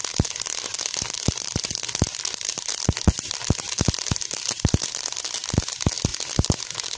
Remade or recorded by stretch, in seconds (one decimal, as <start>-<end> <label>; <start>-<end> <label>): 0.0-7.0 recorded